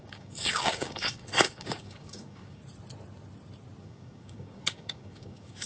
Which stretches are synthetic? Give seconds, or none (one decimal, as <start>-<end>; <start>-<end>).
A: 0.0-2.6; 3.8-5.7